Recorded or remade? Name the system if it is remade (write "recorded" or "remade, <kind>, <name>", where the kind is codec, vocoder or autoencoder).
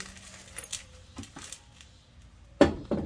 recorded